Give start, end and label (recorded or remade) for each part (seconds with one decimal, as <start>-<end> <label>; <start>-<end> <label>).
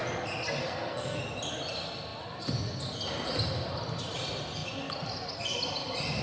0.0-0.6 recorded; 0.6-1.2 remade; 1.2-6.2 recorded